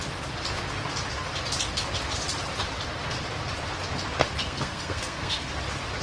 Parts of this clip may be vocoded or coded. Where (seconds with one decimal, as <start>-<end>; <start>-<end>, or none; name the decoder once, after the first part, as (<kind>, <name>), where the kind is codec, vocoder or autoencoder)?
4.2-5.5 (codec, SNAC)